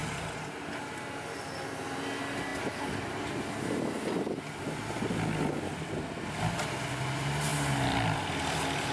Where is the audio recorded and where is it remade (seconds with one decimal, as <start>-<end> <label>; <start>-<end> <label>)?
0.0-7.5 recorded; 7.5-8.2 remade; 8.2-8.9 recorded